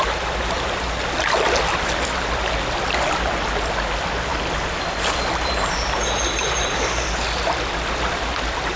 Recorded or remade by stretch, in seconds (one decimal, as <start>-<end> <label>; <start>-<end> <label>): 0.0-8.8 recorded